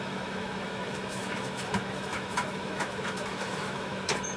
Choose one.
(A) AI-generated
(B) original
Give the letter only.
A